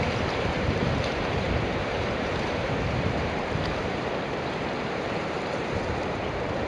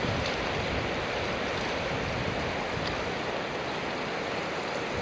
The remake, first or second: first